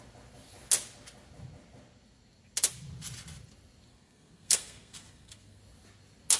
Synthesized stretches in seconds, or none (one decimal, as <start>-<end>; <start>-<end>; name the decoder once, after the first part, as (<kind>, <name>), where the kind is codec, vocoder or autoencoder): 3.9-5.6 (codec, SNAC)